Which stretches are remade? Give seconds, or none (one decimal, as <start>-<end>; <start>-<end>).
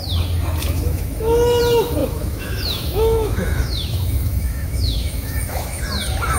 0.6-1.6; 2.0-5.8